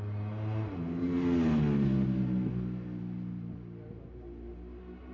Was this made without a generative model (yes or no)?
yes